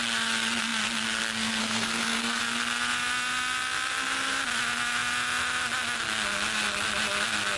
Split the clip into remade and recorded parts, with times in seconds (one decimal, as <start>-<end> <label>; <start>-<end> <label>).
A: 0.0-1.6 recorded; 1.6-2.4 remade; 2.4-7.6 recorded